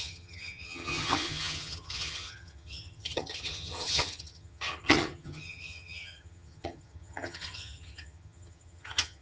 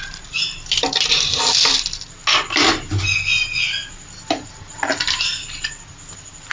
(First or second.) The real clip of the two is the second